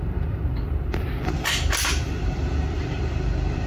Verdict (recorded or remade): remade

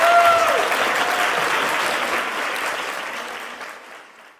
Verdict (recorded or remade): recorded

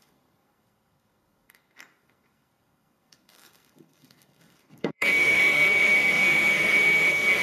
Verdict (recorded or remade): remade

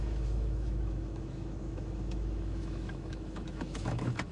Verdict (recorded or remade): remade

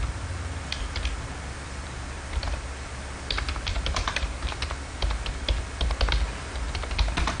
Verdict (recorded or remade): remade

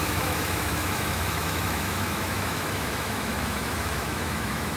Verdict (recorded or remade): remade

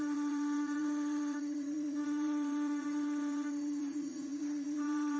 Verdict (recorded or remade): remade